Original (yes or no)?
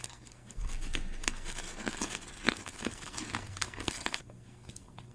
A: no